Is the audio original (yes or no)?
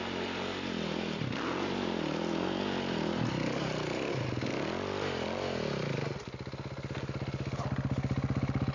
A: yes